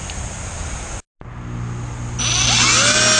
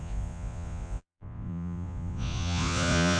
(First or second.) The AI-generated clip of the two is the second